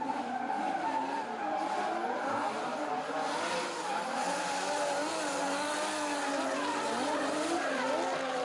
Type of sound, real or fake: real